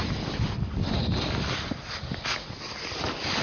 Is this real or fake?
real